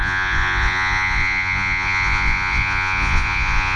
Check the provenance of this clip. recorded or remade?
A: remade